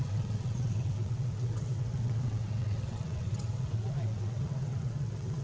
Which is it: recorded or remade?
remade